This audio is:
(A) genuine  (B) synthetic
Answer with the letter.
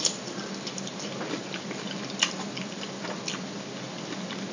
A